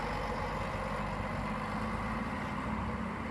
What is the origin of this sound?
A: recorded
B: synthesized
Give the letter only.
A